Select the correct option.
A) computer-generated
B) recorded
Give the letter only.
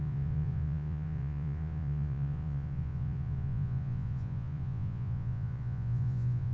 A